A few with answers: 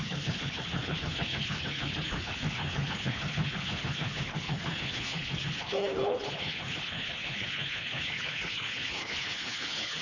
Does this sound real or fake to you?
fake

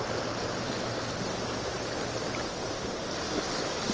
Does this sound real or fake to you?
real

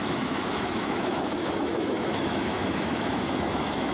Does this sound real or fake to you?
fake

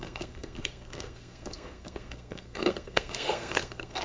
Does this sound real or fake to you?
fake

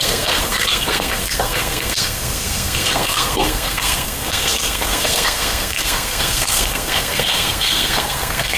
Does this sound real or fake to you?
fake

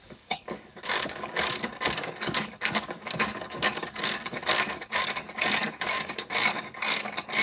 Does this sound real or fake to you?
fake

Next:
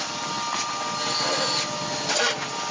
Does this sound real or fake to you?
real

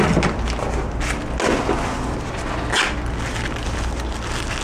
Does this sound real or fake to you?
real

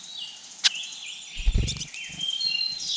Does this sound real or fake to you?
real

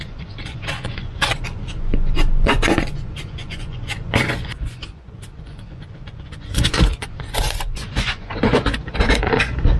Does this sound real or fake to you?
fake